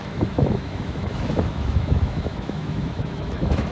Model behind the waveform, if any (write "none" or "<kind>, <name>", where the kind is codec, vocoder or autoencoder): autoencoder, DAC-VAE